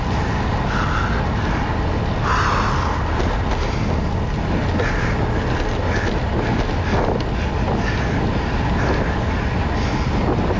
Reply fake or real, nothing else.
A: real